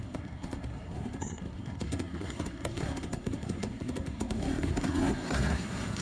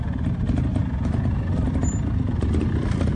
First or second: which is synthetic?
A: first